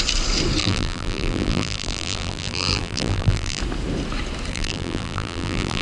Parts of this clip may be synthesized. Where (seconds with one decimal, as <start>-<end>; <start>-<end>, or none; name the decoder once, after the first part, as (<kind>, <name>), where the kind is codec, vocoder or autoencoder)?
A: 0.6-3.6 (vocoder, BigVGAN v2); 4.5-5.8